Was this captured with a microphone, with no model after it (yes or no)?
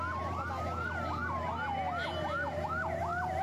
yes